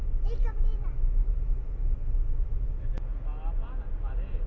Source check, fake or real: real